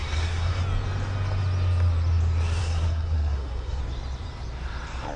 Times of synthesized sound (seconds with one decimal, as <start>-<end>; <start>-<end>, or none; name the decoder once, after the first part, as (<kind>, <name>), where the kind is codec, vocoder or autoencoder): 0.0-0.6 (codec, SNAC); 2.6-3.8